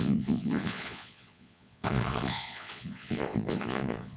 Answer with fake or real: fake